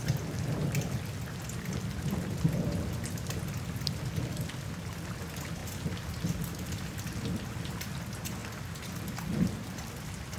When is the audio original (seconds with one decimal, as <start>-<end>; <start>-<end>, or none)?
0.0-10.4